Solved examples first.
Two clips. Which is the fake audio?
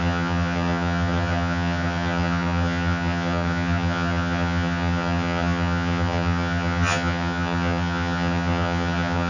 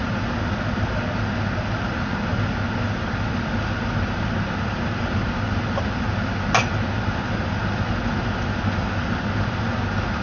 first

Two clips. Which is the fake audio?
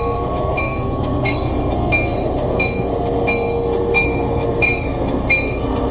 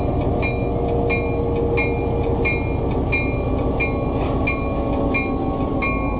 first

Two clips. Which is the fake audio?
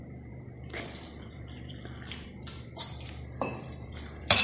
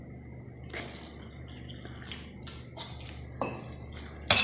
first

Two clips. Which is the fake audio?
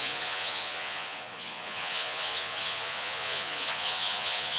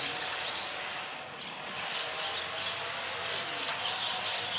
first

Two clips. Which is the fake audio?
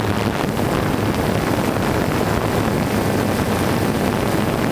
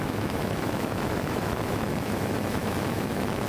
second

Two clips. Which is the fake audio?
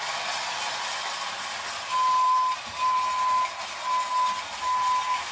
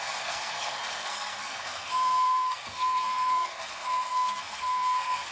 second